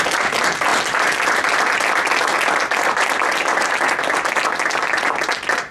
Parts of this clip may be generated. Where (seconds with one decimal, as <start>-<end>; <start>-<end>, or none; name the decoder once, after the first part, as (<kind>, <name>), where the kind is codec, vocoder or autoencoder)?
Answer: none